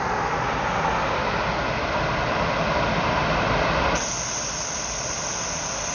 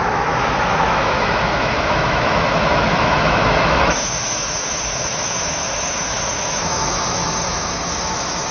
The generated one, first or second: second